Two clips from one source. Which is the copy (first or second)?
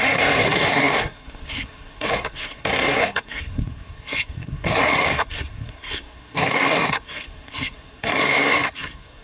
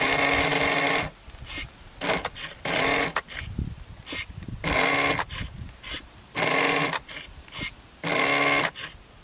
first